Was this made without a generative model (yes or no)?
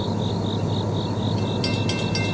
yes